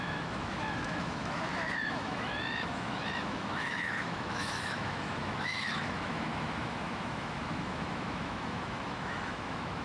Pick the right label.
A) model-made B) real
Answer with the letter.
A